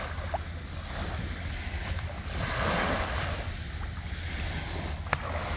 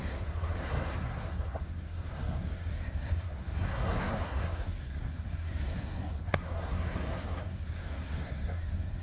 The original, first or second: first